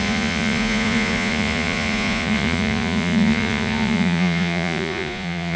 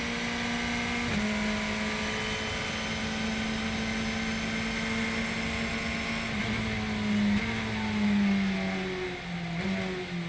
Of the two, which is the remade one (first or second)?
first